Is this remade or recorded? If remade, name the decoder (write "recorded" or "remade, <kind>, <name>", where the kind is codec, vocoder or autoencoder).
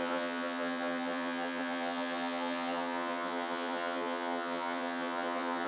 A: remade, vocoder, HiFi-GAN